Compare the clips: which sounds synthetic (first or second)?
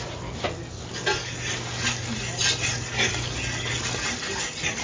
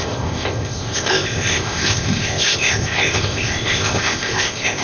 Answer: second